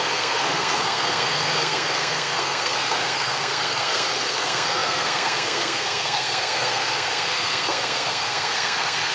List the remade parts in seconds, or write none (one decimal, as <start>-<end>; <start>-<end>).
0.0-9.1